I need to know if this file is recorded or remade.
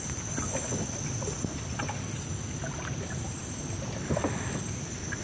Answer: recorded